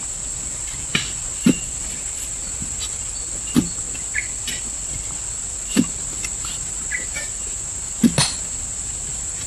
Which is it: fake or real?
fake